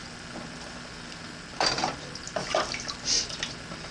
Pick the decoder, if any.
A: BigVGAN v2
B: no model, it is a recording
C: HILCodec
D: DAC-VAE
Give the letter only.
B